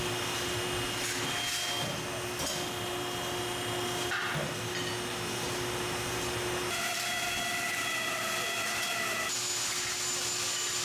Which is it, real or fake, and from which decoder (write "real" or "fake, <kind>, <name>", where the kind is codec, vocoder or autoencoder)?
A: real